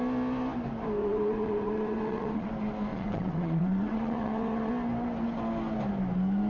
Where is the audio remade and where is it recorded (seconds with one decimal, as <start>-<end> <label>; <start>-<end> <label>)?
0.0-1.0 recorded; 1.0-2.5 remade; 2.5-2.9 recorded; 2.9-4.7 remade; 4.7-6.5 recorded